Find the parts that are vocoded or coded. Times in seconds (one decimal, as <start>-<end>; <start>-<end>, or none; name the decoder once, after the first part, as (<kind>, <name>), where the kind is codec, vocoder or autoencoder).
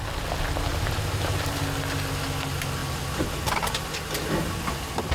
0.7-1.6 (vocoder, BigVGAN v2)